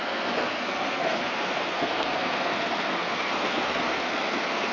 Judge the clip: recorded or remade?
remade